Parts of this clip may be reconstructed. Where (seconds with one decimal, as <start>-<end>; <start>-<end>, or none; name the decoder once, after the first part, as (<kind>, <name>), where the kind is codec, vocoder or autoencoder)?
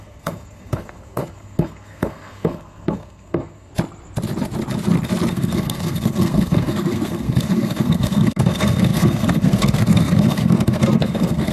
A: 0.0-3.7 (codec, SNAC); 5.3-11.5